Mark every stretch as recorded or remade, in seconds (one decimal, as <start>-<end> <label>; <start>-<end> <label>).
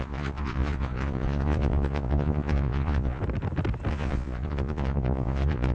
0.0-3.2 remade; 3.2-3.9 recorded; 3.9-5.7 remade